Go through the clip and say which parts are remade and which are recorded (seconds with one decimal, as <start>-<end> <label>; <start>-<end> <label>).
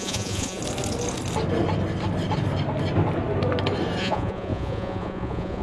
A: 0.0-0.6 remade; 0.6-4.0 recorded; 4.0-5.6 remade